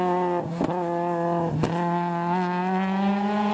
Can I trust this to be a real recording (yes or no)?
yes